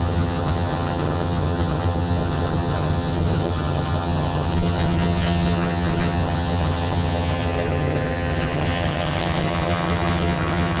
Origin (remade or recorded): remade